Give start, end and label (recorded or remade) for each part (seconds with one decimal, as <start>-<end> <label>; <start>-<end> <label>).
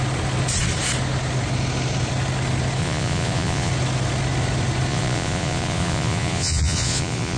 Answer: 0.0-2.8 recorded; 2.8-3.7 remade; 3.7-4.9 recorded; 4.9-7.4 remade